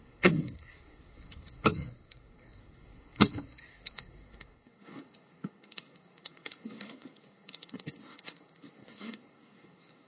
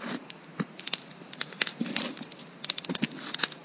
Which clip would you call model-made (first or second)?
first